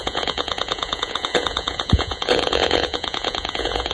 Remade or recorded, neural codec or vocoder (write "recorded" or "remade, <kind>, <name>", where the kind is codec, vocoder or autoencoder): remade, vocoder, Vocos